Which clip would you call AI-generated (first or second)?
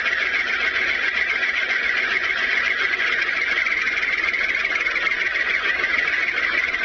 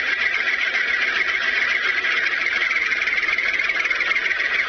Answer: first